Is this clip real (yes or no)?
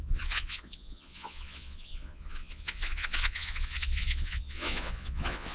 no